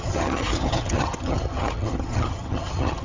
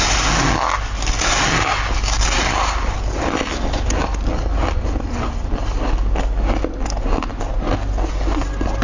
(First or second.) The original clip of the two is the second